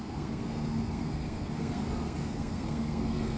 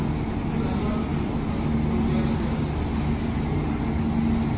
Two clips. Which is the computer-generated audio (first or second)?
first